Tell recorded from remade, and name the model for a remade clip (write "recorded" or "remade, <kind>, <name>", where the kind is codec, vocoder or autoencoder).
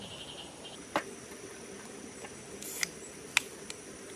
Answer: recorded